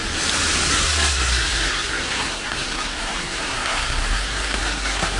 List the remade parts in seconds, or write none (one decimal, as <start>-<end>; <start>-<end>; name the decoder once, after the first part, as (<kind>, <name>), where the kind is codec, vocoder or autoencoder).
0.7-5.2 (codec, SNAC)